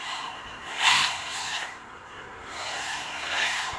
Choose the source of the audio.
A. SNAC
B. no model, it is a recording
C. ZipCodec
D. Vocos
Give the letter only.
A